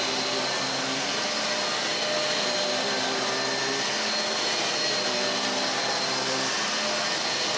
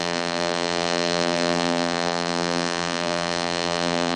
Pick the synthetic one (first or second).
second